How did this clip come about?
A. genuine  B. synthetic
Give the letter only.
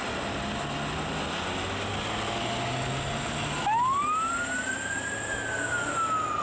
A